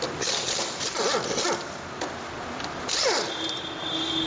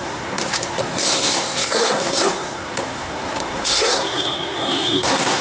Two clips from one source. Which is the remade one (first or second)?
second